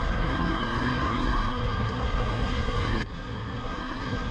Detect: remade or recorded remade